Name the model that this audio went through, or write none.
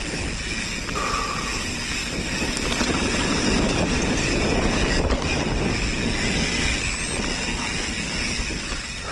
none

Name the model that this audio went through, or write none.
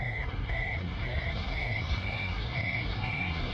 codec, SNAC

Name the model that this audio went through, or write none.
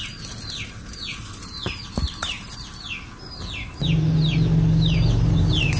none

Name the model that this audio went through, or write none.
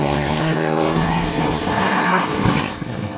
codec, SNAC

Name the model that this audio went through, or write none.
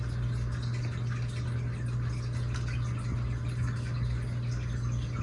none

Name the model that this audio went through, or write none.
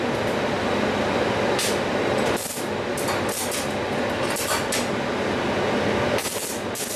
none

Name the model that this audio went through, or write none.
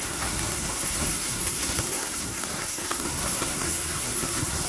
codec, SNAC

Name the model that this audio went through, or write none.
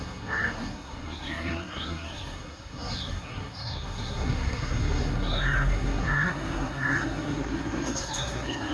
codec, SNAC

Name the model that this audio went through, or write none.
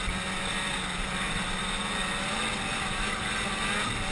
none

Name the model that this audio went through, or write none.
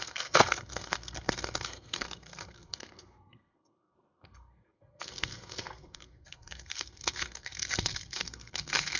codec, SNAC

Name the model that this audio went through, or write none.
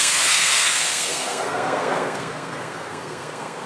codec, SNAC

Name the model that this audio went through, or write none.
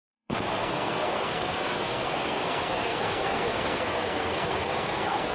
codec, SNAC